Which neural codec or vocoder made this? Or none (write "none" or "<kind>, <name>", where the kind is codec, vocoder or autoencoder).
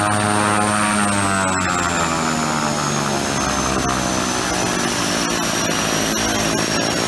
none